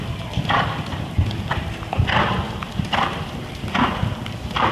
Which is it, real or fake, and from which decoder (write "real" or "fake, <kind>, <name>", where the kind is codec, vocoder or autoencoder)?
real